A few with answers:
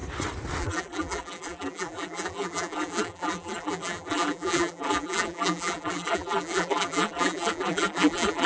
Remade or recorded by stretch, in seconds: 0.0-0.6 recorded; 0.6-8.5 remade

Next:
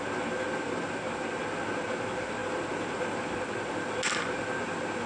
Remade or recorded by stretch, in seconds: 0.0-5.1 recorded

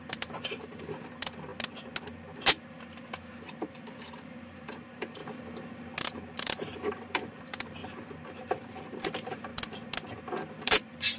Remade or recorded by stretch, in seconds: 0.0-1.5 remade; 1.5-3.9 recorded; 3.9-5.2 remade; 5.2-6.0 recorded; 6.0-7.8 remade; 7.8-8.3 recorded; 8.3-9.5 remade; 9.5-10.6 recorded; 10.6-11.2 remade

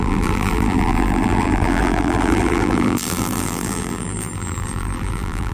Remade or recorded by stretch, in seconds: 0.0-5.5 remade

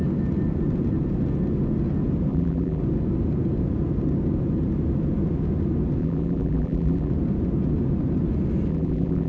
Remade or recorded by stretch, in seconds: 0.0-2.3 recorded; 2.3-2.8 remade; 2.8-6.0 recorded; 6.0-7.1 remade; 7.1-8.7 recorded; 8.7-9.3 remade

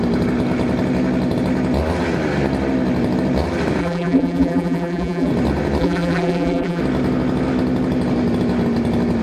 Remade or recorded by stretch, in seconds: 0.0-3.8 recorded; 3.8-5.3 remade; 5.3-5.8 recorded; 5.8-6.8 remade; 6.8-9.2 recorded

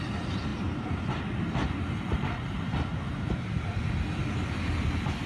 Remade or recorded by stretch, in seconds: 0.0-0.5 recorded; 0.5-1.2 remade; 1.2-1.6 recorded; 1.6-3.8 remade; 3.8-5.3 recorded